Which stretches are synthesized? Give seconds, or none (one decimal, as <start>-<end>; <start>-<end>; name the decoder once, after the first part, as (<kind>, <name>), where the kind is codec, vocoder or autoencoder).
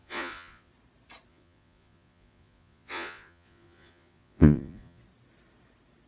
0.0-0.7 (vocoder, Vocos); 1.3-5.0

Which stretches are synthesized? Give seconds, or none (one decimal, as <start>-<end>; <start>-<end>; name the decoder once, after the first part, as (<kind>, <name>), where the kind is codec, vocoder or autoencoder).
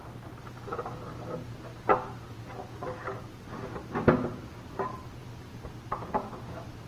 none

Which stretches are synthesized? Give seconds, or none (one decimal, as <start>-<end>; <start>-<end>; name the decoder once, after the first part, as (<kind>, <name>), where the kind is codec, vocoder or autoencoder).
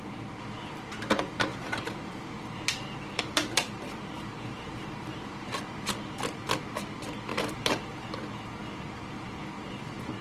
1.5-5.9 (vocoder, BigVGAN v2); 7.3-8.1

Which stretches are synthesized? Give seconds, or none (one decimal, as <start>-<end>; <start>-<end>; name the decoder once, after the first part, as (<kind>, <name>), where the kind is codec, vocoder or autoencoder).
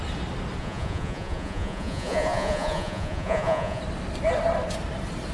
0.6-3.8 (vocoder, Vocos)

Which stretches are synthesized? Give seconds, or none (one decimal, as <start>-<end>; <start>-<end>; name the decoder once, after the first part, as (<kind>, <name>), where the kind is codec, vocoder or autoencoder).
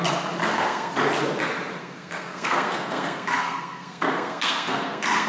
0.4-0.9 (codec, SNAC); 1.8-5.3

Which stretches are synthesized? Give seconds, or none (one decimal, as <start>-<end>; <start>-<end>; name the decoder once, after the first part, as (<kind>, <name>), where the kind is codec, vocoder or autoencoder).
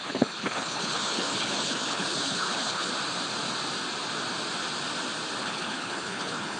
0.0-2.9 (codec, HILCodec); 5.4-6.6